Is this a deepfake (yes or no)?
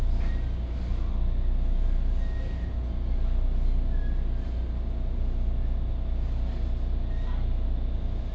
no